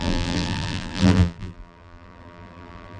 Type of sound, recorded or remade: remade